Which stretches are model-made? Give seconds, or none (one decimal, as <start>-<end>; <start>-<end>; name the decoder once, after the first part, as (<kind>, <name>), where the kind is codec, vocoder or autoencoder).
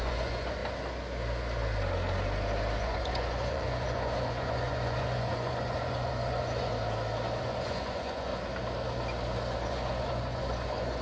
0.0-0.6 (vocoder, Vocos); 2.8-6.7; 7.4-8.3; 9.7-11.0